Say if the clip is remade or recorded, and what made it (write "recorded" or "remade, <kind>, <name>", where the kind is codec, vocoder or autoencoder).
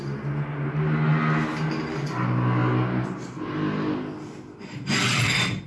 recorded